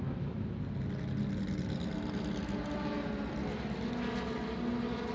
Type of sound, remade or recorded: recorded